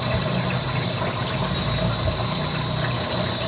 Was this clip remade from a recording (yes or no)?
no